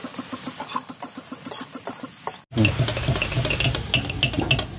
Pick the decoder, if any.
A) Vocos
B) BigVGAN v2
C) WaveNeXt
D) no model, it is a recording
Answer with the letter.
D